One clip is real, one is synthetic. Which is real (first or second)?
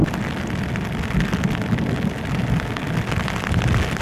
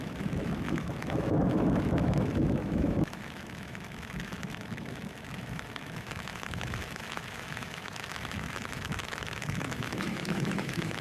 first